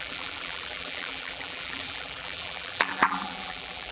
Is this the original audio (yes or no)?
no